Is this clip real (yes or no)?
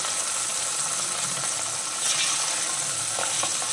yes